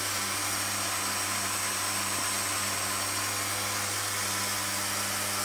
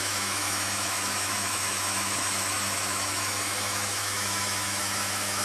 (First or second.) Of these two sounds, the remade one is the second